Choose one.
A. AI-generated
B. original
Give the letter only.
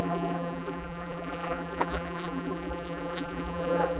A